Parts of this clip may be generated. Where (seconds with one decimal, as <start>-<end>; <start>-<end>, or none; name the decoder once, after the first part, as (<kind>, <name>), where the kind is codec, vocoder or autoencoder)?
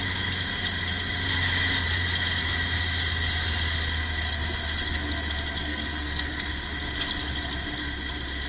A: 5.7-6.5 (codec, SNAC)